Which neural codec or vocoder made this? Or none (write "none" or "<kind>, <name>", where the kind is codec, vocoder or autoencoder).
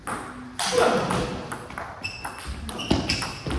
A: none